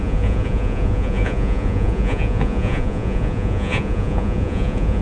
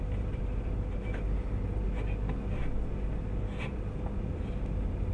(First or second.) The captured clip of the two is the second